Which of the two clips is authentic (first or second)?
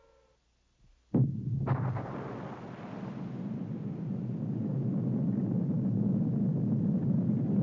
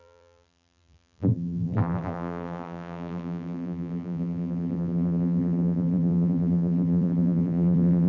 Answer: first